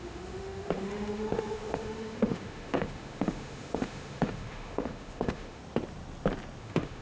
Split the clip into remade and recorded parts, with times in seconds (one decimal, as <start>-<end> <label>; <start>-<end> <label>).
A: 0.0-5.6 remade; 5.6-6.6 recorded; 6.6-7.0 remade